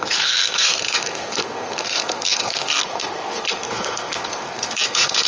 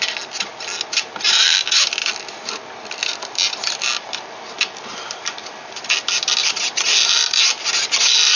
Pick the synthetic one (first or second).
first